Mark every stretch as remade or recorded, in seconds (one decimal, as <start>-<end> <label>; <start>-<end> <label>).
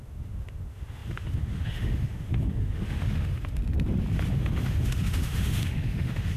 0.0-3.6 remade; 3.6-4.3 recorded; 4.3-6.4 remade